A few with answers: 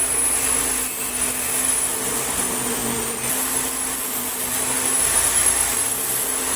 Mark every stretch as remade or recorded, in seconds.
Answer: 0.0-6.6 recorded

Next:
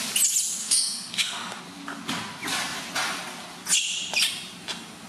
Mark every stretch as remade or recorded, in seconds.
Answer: 0.0-0.6 recorded; 0.6-1.6 remade; 1.6-5.1 recorded